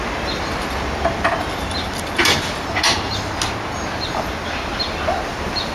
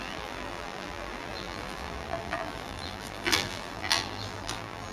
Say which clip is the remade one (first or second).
second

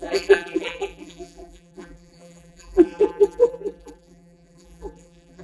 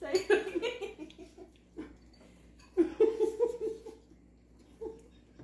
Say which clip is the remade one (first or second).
first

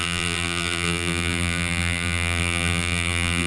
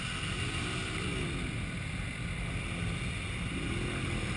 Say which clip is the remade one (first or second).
first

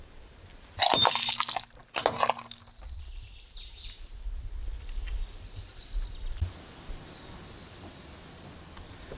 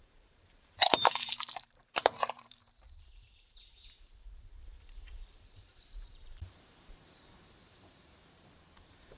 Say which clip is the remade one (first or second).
second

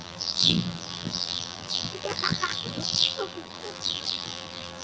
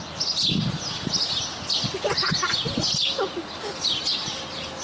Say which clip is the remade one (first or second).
first